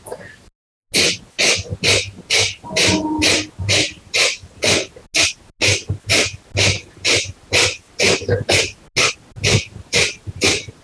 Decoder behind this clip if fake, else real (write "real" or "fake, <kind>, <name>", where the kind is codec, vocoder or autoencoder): real